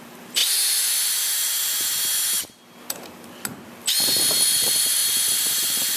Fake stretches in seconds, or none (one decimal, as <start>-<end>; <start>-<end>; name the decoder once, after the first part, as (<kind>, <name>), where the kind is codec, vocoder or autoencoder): 0.0-0.4 (vocoder, BigVGAN v2); 4.0-6.0